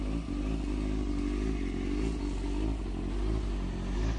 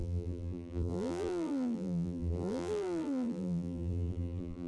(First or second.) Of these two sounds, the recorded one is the first